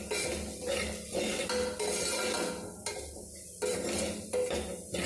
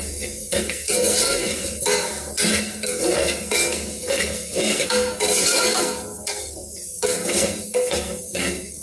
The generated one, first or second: second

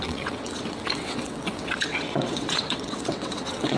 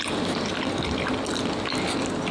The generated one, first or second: first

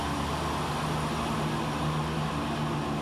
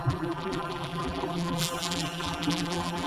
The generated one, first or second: second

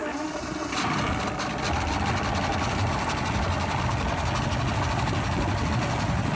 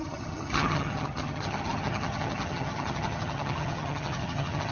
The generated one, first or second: second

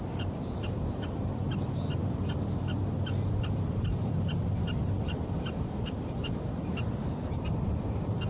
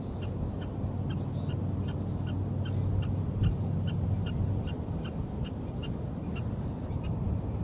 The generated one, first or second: first